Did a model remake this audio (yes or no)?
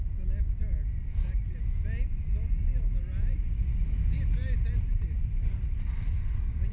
no